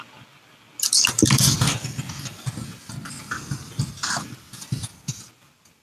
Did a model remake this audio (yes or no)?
no